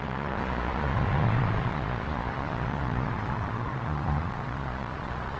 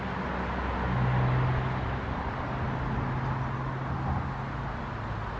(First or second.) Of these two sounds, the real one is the second